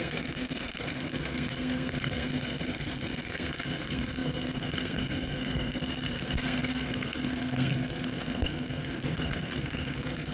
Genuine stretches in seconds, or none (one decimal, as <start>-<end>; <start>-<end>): none